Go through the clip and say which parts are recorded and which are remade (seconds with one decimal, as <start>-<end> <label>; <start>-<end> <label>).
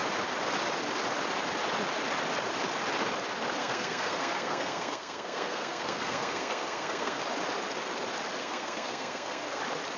0.0-3.6 recorded; 3.6-7.2 remade; 7.2-8.4 recorded; 8.4-9.6 remade; 9.6-10.0 recorded